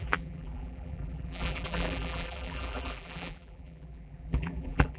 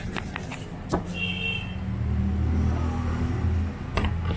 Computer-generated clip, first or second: first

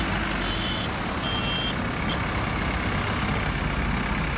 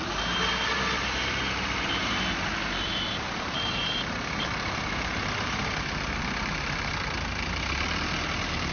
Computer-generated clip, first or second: second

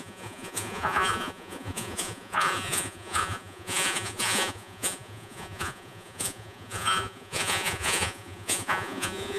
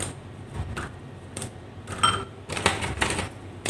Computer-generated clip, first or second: first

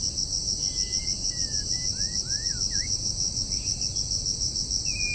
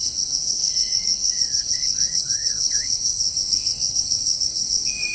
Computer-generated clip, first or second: second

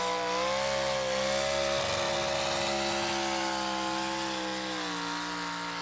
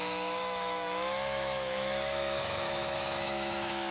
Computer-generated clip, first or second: second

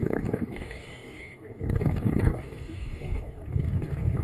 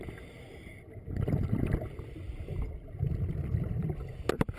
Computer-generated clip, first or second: first